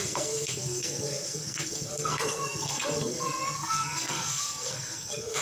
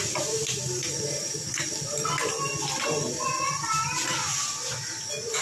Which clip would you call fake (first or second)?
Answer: first